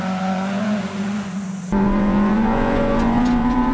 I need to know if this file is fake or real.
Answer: fake